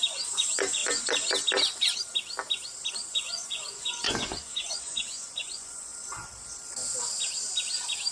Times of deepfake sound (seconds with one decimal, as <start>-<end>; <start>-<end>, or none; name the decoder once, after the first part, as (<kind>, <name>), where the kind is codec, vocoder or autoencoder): 0.0-0.8 (vocoder, Vocos); 2.9-5.9